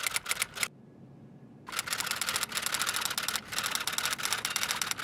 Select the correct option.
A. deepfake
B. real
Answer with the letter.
B